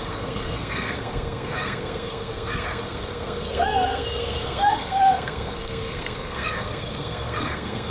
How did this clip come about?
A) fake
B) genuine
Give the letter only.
A